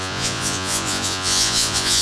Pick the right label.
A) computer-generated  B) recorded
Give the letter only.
A